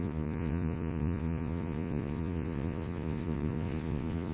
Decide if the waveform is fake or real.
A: fake